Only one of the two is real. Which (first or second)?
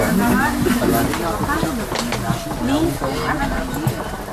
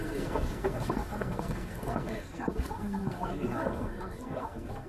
first